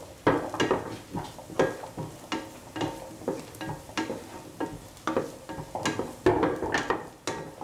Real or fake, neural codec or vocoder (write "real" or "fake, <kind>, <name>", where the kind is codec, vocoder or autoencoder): real